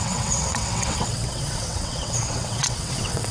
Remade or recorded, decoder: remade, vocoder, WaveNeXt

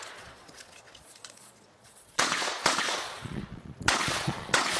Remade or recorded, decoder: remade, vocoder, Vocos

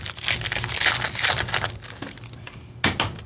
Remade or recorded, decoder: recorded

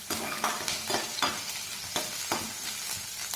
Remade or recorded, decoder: recorded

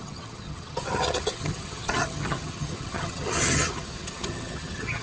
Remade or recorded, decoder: remade, vocoder, HiFi-GAN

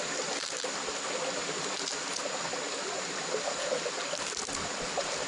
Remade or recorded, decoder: recorded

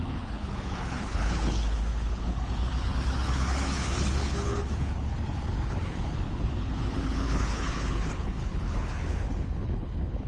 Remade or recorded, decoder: remade, codec, HILCodec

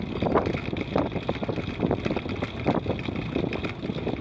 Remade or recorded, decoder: recorded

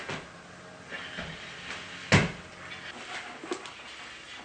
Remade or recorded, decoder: recorded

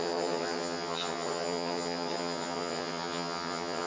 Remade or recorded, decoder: remade, vocoder, HiFi-GAN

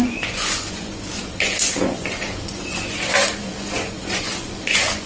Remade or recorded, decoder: remade, vocoder, Vocos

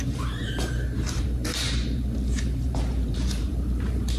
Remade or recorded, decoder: remade, vocoder, BigVGAN v2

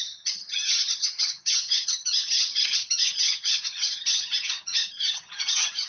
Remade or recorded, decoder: remade, vocoder, HiFi-GAN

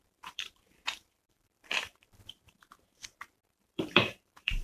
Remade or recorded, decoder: remade, vocoder, BigVGAN v2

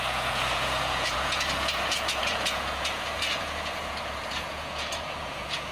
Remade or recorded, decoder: remade, vocoder, Vocos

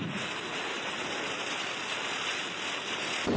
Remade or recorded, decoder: recorded